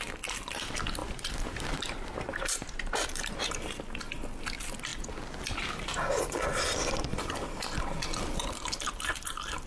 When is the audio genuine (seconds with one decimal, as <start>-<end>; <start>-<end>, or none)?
0.0-1.0; 3.5-9.7